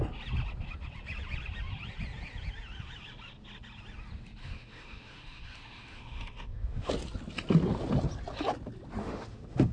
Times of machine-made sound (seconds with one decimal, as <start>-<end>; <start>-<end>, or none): 4.4-6.9; 9.0-9.7